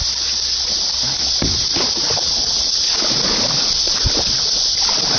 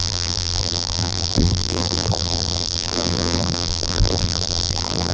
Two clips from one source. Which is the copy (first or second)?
second